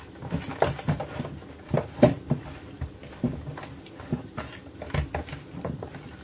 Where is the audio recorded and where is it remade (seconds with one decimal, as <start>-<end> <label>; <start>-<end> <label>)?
0.0-6.2 remade